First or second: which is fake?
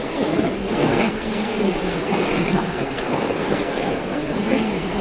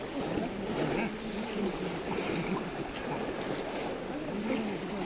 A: first